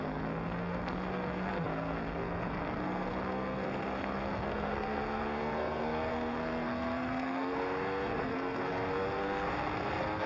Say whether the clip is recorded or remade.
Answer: remade